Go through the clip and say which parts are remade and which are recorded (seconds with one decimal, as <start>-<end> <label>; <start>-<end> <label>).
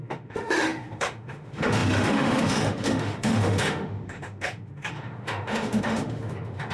0.0-6.7 remade